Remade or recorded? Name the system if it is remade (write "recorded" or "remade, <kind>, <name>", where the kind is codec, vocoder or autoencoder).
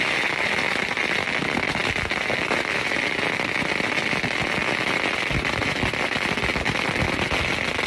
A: recorded